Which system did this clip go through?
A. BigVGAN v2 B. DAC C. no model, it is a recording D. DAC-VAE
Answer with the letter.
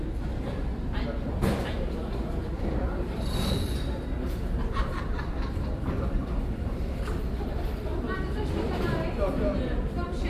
A